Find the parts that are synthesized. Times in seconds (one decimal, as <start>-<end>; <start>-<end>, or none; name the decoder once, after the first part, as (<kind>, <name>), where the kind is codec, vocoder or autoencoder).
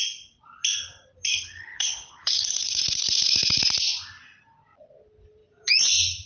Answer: 1.3-3.6 (codec, HILCodec)